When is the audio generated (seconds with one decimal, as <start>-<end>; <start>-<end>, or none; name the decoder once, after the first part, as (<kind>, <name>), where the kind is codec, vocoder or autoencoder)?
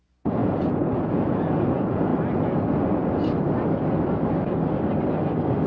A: 0.0-2.1 (vocoder, Vocos)